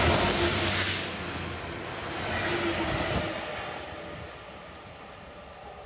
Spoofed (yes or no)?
no